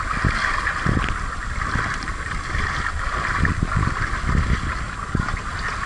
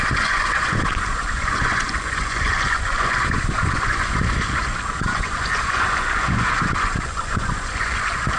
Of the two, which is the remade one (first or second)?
second